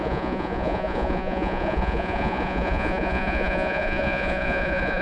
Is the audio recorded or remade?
remade